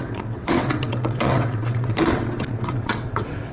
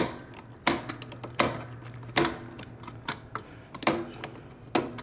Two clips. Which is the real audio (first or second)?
second